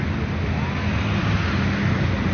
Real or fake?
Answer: real